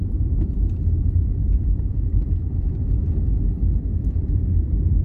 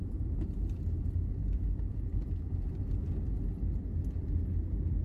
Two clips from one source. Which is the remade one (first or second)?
first